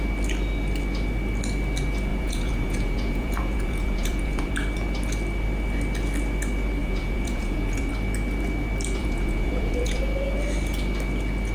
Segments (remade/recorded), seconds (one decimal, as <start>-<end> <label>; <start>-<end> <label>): 0.0-2.1 recorded; 2.1-4.5 remade; 4.5-6.8 recorded; 6.8-7.9 remade; 7.9-9.0 recorded; 9.0-10.0 remade; 10.0-11.5 recorded